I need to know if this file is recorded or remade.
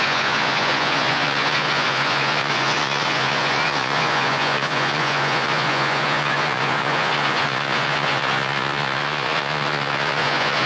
remade